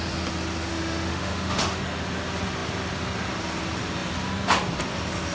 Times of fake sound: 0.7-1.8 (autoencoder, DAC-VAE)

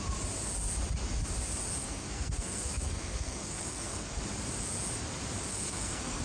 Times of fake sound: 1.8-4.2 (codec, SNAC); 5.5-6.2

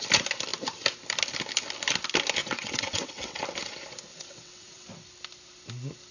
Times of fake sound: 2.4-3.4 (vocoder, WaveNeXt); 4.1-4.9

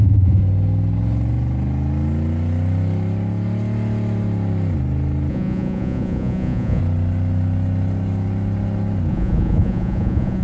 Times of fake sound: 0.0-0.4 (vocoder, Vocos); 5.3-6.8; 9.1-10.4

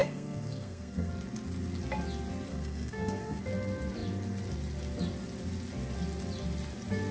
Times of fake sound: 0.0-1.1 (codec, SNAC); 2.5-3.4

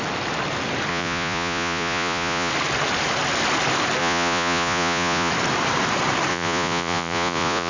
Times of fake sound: 0.9-2.5 (vocoder, Vocos); 4.0-5.3; 6.3-7.7